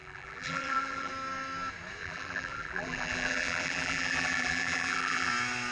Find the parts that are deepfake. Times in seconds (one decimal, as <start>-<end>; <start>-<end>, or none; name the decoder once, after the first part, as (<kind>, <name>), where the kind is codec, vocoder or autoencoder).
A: 0.0-1.1 (vocoder, BigVGAN v2); 2.0-5.3

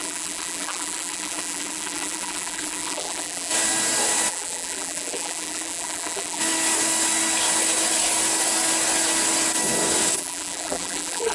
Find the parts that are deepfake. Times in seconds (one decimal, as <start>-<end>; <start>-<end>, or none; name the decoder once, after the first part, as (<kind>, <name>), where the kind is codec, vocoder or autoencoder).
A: 0.0-3.5 (vocoder, BigVGAN v2); 4.3-6.4; 10.2-11.3

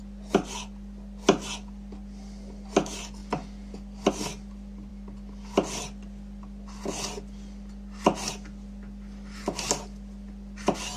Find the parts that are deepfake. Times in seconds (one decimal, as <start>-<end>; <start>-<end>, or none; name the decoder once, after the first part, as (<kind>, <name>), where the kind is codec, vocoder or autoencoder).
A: none